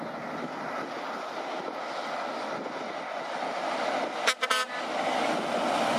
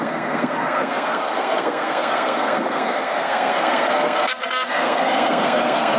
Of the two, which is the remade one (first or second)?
second